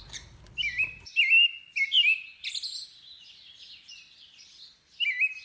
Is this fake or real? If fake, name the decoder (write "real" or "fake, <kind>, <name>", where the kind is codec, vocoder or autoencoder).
real